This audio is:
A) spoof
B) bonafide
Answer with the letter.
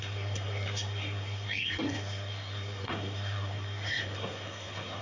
A